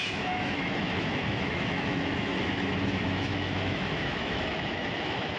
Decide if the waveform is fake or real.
fake